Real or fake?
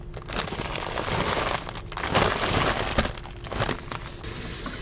real